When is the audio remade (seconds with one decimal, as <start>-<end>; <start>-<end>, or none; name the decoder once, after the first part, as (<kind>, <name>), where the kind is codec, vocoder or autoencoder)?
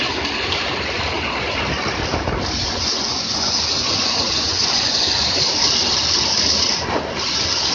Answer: 2.6-5.6 (vocoder, Vocos)